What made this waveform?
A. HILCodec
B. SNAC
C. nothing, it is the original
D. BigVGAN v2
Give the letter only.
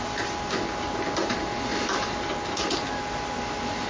C